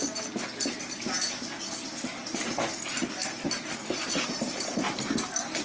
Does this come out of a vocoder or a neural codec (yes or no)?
no